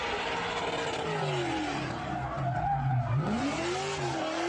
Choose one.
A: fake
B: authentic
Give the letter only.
B